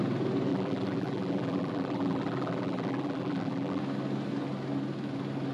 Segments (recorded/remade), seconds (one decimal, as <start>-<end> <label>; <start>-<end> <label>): 0.0-0.5 recorded; 0.5-3.8 remade; 3.8-5.5 recorded